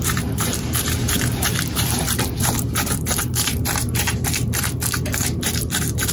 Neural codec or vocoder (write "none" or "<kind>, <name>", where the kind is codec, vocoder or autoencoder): vocoder, BigVGAN v2